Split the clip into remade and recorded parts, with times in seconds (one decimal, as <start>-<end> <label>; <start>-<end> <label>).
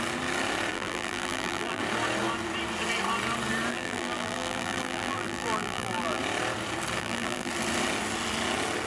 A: 0.0-0.7 recorded; 0.7-1.8 remade; 1.8-3.7 recorded; 3.7-6.2 remade; 6.2-7.0 recorded; 7.0-7.5 remade; 7.5-8.9 recorded